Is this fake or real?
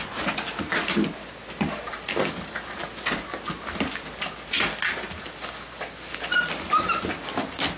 real